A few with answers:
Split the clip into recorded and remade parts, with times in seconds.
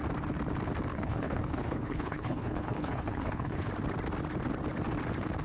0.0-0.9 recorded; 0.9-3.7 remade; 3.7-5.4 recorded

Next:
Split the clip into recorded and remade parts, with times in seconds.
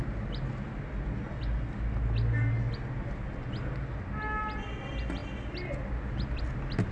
0.0-6.9 recorded